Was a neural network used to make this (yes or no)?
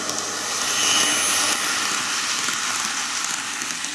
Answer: no